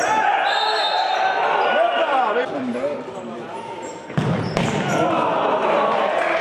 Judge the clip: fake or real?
fake